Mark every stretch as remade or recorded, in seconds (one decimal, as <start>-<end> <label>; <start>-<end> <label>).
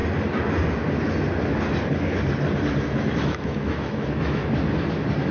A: 0.0-3.2 recorded; 3.2-4.4 remade; 4.4-5.3 recorded